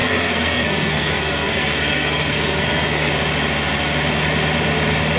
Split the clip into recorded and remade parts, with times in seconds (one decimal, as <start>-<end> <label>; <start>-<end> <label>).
0.0-3.1 remade; 3.1-5.2 recorded